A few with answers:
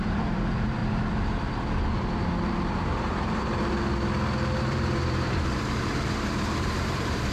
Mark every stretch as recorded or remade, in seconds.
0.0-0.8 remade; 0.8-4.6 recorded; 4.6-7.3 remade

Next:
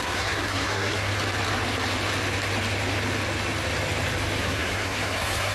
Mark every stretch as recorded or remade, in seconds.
0.0-1.1 remade; 1.1-4.4 recorded; 4.4-5.5 remade

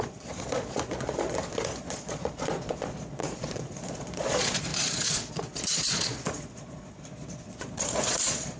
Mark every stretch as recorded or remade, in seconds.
0.0-8.6 remade

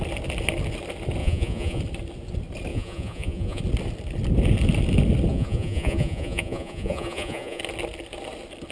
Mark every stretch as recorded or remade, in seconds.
0.0-1.2 recorded; 1.2-1.8 remade; 1.8-2.7 recorded; 2.7-3.6 remade; 3.6-5.3 recorded; 5.3-7.6 remade; 7.6-8.7 recorded